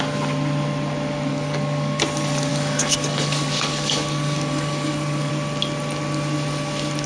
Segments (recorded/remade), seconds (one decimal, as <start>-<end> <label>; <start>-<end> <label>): 0.0-1.3 recorded; 1.3-2.0 remade; 2.0-2.5 recorded; 2.5-5.3 remade; 5.3-7.1 recorded